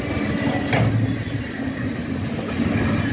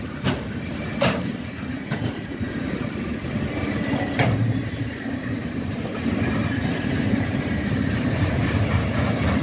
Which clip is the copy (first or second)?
second